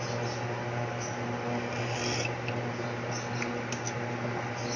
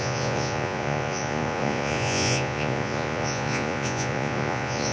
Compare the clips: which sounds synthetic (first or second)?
second